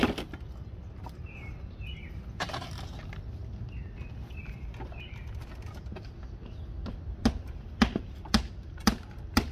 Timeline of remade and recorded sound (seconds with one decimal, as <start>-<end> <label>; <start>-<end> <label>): 0.0-9.5 recorded